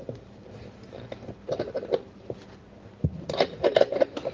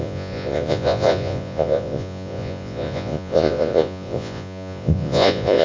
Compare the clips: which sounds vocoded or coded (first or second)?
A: second